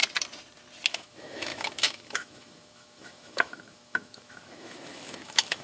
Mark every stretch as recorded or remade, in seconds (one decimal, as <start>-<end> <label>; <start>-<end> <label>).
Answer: 0.0-0.9 recorded; 0.9-5.6 remade